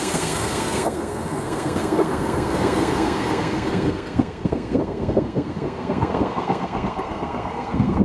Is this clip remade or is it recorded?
remade